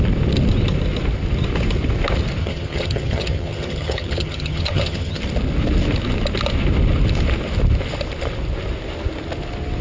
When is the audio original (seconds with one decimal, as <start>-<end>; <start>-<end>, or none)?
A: 0.0-2.4; 5.2-9.8